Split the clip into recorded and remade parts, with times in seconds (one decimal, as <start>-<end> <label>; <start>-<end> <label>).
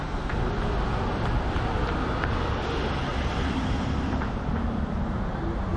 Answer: 0.0-3.1 recorded; 3.1-4.5 remade; 4.5-5.8 recorded